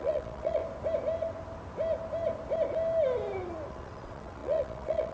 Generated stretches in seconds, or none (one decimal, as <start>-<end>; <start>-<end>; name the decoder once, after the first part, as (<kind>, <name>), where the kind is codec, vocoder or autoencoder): 0.0-0.6 (vocoder, WaveNeXt); 3.7-5.1